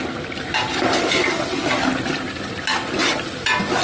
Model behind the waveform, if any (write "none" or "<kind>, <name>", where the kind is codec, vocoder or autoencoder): none